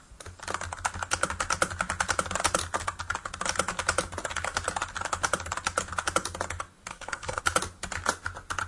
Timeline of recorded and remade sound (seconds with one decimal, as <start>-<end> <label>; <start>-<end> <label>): 0.0-6.9 recorded; 6.9-7.4 remade; 7.4-8.7 recorded